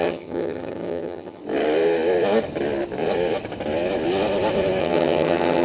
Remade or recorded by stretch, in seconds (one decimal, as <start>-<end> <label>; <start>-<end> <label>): 0.0-1.4 remade; 1.4-4.8 recorded; 4.8-5.6 remade